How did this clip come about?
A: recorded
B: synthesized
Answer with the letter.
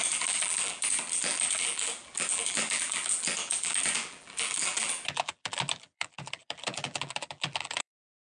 B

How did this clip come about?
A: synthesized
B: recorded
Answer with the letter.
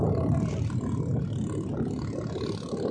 B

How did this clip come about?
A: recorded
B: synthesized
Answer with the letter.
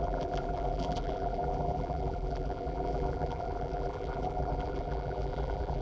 B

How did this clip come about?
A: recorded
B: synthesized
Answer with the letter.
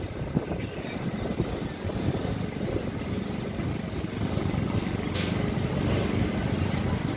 A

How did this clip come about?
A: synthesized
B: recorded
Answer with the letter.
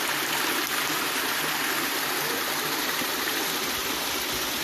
B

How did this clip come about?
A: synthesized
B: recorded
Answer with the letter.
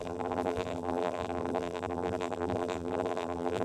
A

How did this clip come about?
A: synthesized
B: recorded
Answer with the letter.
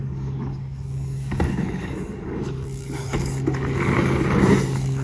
A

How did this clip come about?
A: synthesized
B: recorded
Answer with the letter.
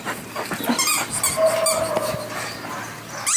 B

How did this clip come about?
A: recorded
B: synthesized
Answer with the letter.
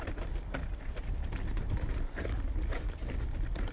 A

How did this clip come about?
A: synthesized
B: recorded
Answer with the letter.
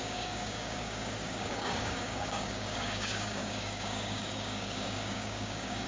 A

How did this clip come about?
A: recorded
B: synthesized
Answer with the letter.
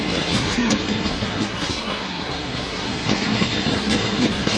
B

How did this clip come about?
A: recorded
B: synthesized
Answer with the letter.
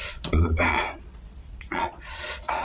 B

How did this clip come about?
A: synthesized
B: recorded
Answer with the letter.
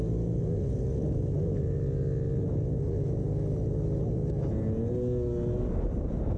B